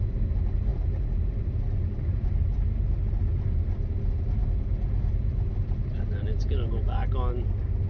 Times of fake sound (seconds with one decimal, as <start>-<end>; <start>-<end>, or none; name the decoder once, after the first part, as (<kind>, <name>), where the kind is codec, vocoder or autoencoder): none